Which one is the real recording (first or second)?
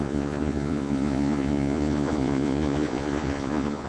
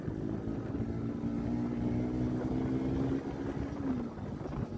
second